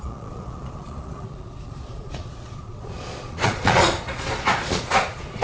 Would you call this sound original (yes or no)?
no